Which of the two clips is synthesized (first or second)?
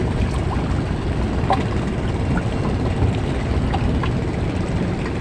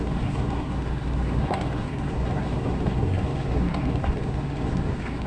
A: second